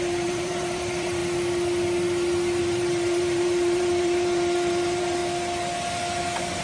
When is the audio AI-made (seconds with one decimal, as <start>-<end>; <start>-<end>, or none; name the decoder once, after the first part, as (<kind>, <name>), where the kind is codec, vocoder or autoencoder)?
0.0-1.2 (vocoder, BigVGAN v2); 2.6-5.2

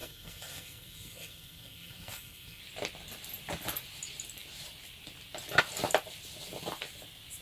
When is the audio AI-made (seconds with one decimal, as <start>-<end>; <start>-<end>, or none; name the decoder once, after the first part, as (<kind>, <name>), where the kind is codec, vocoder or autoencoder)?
0.0-2.6 (codec, SNAC)

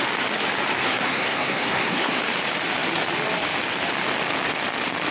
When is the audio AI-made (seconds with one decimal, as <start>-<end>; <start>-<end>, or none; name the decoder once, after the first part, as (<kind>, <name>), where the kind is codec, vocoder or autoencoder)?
0.8-2.2 (codec, SNAC)

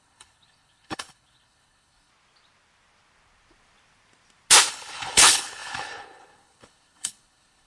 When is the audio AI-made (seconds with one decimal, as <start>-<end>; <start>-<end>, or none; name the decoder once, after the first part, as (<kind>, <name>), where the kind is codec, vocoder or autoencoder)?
0.0-2.1 (codec, HILCodec); 4.7-7.7

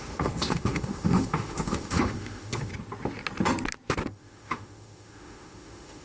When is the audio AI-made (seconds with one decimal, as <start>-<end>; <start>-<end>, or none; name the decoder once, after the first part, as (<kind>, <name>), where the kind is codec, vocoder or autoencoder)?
0.0-2.7 (autoencoder, DAC-VAE); 4.1-6.0

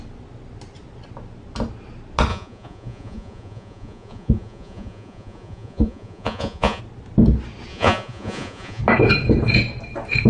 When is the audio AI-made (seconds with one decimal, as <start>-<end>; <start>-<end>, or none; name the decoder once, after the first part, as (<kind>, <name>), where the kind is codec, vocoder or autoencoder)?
2.3-6.8 (vocoder, Vocos); 7.7-8.8

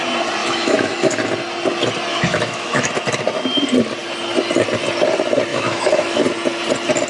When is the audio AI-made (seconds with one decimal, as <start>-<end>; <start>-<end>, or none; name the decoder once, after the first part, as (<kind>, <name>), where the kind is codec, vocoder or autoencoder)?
0.4-1.1 (autoencoder, DAC-VAE); 2.1-2.9; 5.5-6.2